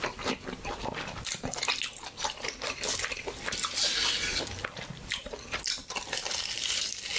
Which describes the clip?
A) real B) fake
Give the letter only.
B